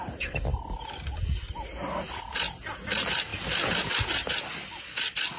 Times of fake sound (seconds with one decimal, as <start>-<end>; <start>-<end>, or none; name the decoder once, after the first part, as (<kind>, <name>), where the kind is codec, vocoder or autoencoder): none